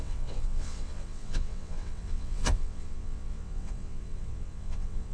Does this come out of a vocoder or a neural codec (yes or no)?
yes